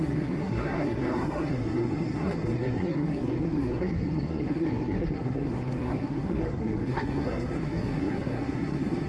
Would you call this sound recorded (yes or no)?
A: no